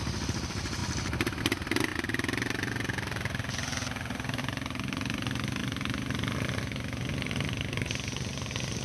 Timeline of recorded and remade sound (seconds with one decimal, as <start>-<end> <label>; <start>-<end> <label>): 0.0-8.8 recorded